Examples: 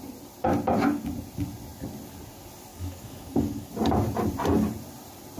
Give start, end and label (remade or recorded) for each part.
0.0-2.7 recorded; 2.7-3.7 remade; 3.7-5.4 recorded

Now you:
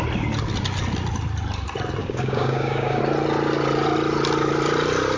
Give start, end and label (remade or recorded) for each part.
0.0-2.0 recorded; 2.0-3.0 remade; 3.0-5.2 recorded

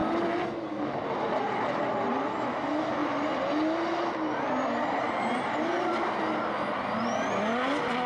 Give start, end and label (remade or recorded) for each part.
0.0-8.1 recorded

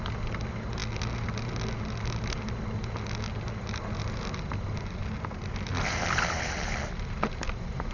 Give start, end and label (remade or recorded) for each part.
0.0-7.9 recorded

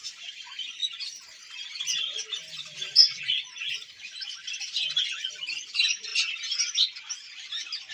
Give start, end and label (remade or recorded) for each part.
0.0-7.9 recorded

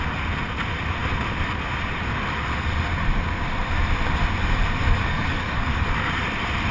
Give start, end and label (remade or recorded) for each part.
0.0-5.1 recorded; 5.1-5.8 remade; 5.8-6.7 recorded

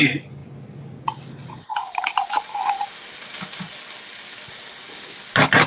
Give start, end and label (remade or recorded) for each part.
0.0-5.7 recorded